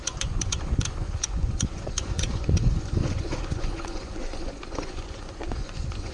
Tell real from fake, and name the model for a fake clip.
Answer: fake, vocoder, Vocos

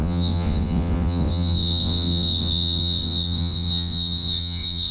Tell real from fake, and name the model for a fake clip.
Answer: fake, vocoder, WaveNeXt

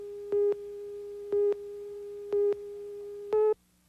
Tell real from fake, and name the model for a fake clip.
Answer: real